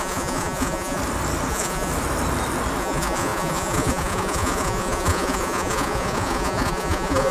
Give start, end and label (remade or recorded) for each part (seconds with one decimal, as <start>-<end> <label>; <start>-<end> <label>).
0.0-1.0 remade; 1.0-1.5 recorded; 1.5-1.9 remade; 1.9-2.8 recorded; 2.8-7.3 remade